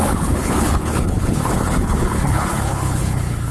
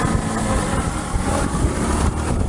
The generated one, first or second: first